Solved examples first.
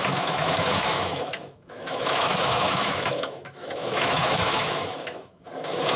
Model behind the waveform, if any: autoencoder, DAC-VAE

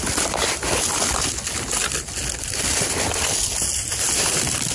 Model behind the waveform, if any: none